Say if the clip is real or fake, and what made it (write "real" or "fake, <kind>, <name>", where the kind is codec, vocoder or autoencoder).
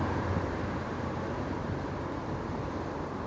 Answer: real